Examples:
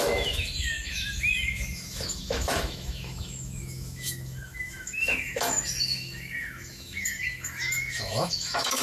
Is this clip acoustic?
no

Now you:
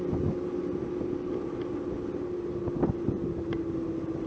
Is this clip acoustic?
yes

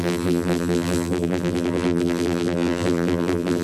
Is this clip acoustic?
no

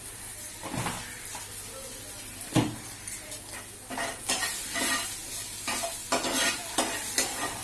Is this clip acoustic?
yes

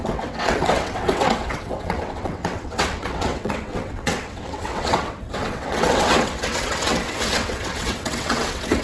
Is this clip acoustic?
no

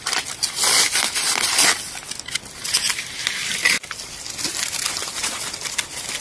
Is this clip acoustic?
yes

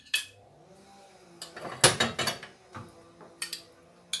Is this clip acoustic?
yes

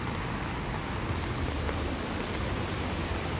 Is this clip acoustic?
yes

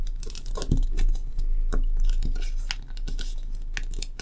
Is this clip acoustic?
yes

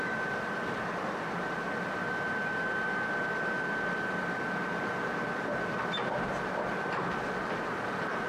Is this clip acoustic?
yes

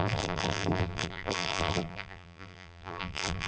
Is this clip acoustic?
no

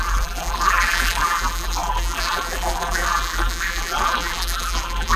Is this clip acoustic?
no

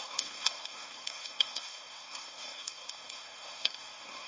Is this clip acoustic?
no